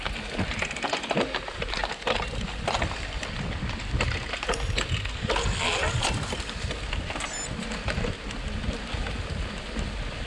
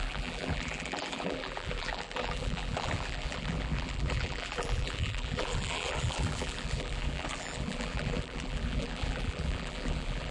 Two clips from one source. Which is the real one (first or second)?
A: first